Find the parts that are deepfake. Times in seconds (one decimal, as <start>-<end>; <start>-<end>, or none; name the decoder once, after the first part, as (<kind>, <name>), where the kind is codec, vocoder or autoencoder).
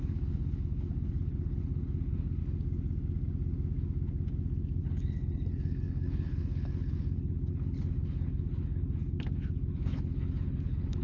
0.0-2.4 (codec, HILCodec); 4.8-11.0